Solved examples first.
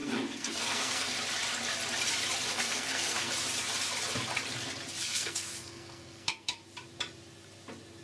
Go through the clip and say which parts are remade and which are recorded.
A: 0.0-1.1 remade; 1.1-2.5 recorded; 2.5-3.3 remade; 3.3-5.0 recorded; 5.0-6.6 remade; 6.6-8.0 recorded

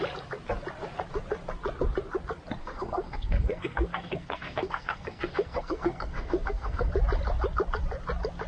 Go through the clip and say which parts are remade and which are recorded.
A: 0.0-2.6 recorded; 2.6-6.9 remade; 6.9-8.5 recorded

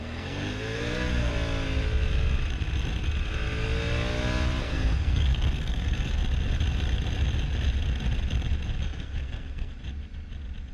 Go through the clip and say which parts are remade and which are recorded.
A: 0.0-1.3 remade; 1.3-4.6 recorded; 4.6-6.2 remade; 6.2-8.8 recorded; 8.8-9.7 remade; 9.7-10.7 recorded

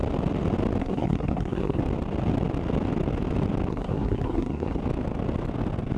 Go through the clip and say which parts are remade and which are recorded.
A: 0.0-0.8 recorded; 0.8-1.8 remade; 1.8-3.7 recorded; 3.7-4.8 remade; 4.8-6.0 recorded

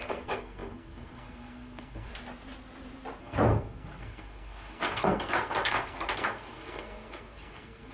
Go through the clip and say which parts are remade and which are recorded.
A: 0.0-2.1 remade; 2.1-3.2 recorded; 3.2-7.9 remade

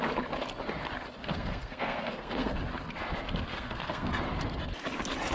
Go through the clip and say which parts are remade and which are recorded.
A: 0.0-1.2 recorded; 1.2-2.6 remade; 2.6-3.5 recorded; 3.5-4.1 remade; 4.1-5.3 recorded

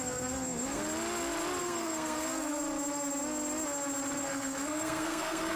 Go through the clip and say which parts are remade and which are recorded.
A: 0.0-0.8 remade; 0.8-1.6 recorded; 1.6-2.6 remade; 2.6-4.2 recorded; 4.2-5.6 remade